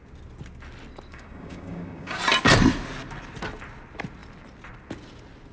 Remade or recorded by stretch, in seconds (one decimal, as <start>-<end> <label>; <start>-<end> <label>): 0.0-1.1 recorded; 1.1-2.2 remade; 2.2-5.5 recorded